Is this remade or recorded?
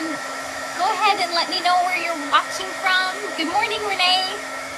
remade